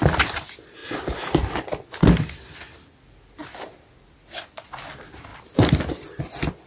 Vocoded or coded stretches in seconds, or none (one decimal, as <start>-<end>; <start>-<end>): none